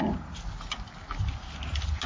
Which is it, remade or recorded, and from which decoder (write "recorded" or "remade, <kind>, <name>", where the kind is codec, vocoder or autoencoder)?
recorded